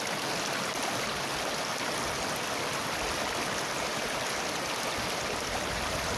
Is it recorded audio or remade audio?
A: recorded